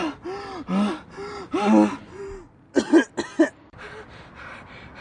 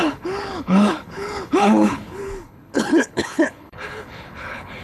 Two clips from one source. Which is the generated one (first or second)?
second